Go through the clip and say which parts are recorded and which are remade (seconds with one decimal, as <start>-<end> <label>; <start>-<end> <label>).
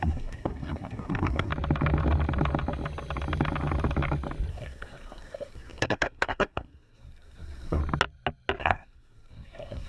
0.0-1.5 remade; 1.5-4.5 recorded; 4.5-7.8 remade; 7.8-8.6 recorded; 8.6-9.9 remade